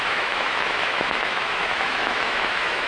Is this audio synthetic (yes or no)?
yes